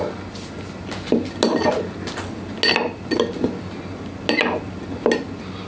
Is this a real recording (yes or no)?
yes